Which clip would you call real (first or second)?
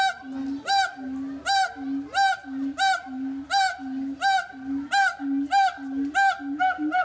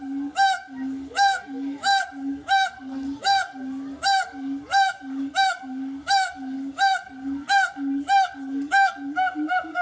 first